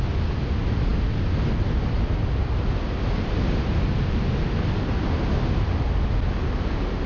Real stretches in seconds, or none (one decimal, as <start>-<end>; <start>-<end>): 0.0-7.1